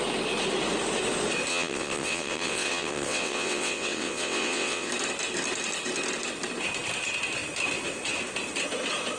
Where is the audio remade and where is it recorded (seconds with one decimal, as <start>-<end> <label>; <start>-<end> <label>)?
0.0-1.5 recorded; 1.5-4.9 remade; 4.9-9.2 recorded